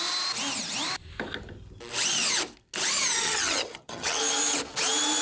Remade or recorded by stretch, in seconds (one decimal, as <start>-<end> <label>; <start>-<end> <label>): 0.0-3.2 recorded; 3.2-4.2 remade; 4.2-5.2 recorded